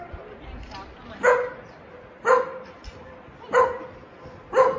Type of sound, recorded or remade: recorded